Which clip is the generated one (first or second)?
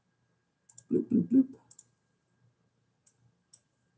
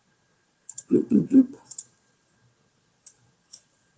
second